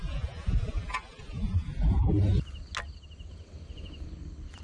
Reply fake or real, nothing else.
real